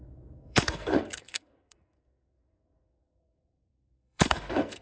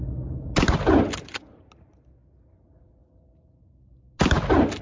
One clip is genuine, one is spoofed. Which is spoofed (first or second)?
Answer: first